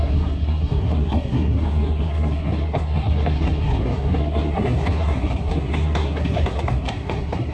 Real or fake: fake